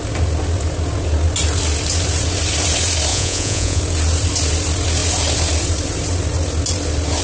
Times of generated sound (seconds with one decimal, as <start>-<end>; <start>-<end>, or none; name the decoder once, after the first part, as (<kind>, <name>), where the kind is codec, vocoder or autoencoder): 3.1-3.8 (vocoder, Vocos)